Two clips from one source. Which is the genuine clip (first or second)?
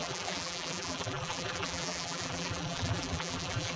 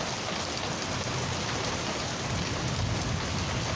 second